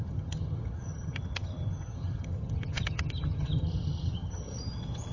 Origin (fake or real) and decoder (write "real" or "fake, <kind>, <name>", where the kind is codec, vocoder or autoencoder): fake, vocoder, HiFi-GAN